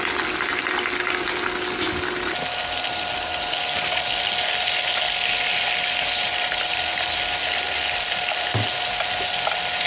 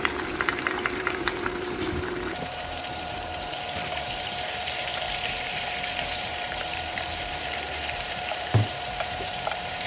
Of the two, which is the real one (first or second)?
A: first